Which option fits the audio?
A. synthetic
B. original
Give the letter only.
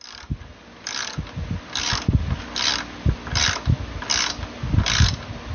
B